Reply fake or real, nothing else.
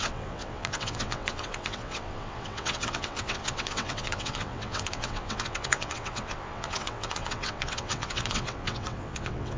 fake